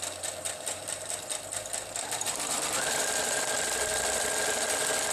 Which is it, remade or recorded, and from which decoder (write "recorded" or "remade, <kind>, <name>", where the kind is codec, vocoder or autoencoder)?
remade, vocoder, BigVGAN v2